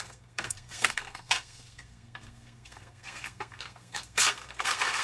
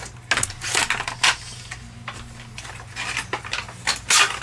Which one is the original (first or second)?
second